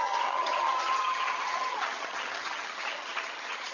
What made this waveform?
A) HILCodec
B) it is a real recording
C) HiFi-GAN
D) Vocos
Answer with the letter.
C